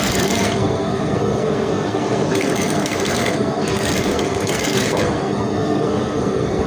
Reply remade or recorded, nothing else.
remade